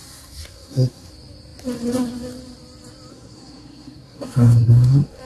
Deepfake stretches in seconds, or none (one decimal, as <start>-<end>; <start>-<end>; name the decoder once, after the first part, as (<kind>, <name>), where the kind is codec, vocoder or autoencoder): 0.0-1.1 (codec, SNAC); 3.1-5.2